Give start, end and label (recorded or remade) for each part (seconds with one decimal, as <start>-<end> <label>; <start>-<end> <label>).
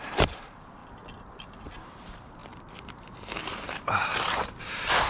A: 0.0-0.8 remade; 0.8-1.6 recorded; 1.6-5.1 remade